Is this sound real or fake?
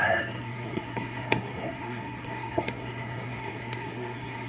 fake